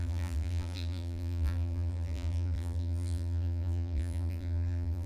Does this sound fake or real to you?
fake